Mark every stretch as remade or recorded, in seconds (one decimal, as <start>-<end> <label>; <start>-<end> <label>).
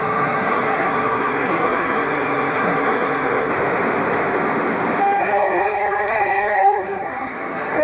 0.0-3.5 remade; 3.5-5.2 recorded; 5.2-7.8 remade